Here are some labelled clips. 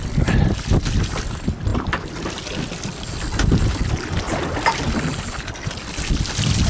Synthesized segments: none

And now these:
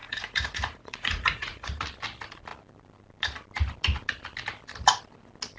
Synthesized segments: 0.0-1.8 (vocoder, Vocos)

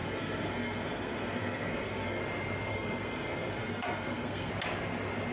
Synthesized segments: 0.0-2.2 (codec, SNAC); 2.7-4.5